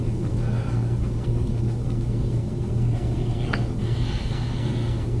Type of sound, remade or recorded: remade